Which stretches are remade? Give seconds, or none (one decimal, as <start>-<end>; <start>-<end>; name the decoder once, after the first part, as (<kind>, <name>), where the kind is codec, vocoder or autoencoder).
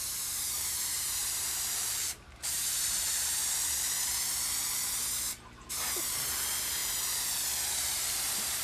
0.0-3.4 (vocoder, BigVGAN v2); 5.1-6.8; 7.8-8.6